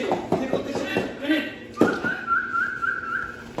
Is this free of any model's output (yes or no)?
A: no